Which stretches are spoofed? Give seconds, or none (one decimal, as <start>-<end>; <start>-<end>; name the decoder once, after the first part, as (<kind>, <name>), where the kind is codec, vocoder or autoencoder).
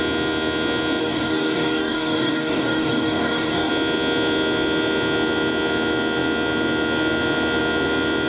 1.0-3.7 (codec, DAC)